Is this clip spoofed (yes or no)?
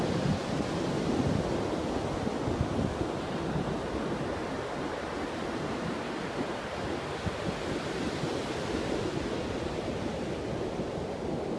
no